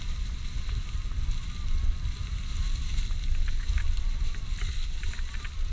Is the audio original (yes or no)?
yes